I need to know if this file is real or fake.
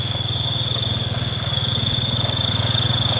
fake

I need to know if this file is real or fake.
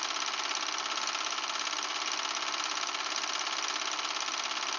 real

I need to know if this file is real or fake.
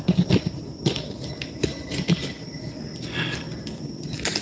real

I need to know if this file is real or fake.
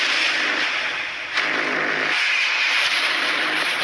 real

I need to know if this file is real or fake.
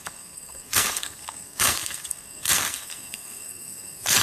fake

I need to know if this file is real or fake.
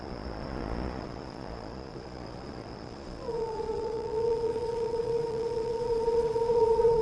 fake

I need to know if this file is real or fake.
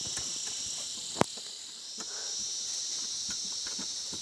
real